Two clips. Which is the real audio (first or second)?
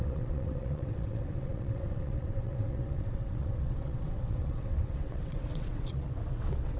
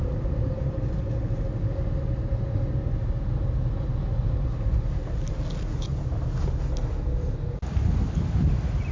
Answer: second